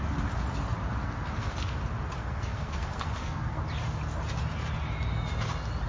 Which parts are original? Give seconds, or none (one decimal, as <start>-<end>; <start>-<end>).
0.0-1.0; 1.8-2.2; 3.6-5.9